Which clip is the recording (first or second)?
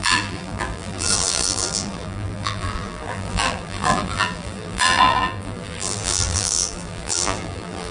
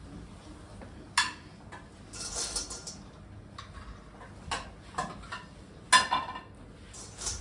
second